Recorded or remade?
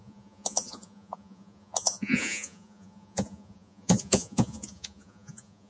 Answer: remade